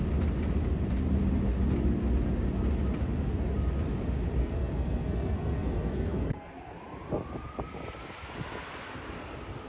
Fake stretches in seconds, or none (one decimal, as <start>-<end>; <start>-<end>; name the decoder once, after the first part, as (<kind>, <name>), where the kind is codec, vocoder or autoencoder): 4.4-6.6 (codec, SNAC)